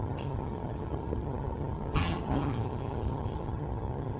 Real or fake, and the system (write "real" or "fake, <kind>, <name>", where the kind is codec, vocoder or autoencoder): fake, vocoder, HiFi-GAN